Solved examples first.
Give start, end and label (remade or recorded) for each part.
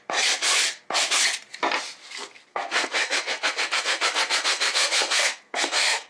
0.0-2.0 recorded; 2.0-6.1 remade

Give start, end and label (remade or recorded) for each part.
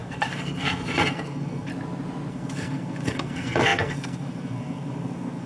0.0-1.7 remade; 1.7-2.3 recorded; 2.3-5.5 remade